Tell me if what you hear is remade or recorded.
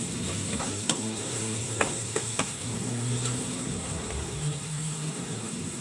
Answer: remade